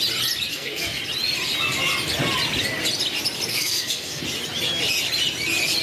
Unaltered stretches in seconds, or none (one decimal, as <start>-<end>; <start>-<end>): 0.0-0.5; 1.0-3.5; 4.2-5.8